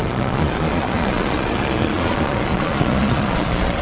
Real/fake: fake